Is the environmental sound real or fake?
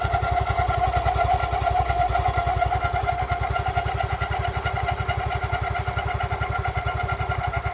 real